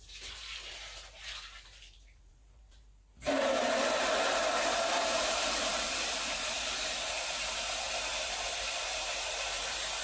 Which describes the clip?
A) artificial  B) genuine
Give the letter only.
A